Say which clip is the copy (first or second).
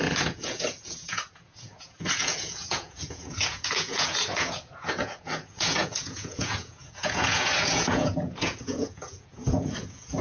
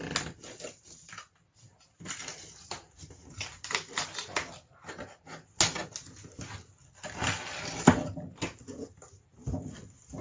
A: first